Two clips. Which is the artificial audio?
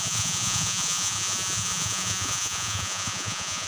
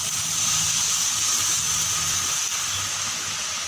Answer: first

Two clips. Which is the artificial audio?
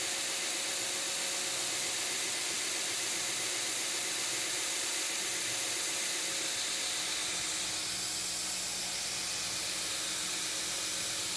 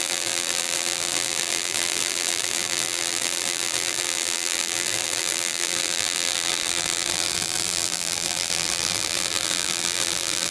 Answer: second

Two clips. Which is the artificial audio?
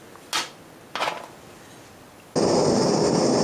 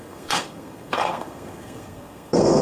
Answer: second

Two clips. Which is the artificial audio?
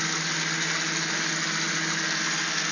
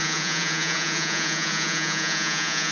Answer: second